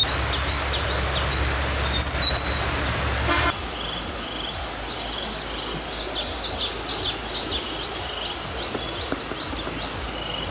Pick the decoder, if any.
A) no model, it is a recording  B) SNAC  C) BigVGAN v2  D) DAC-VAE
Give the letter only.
A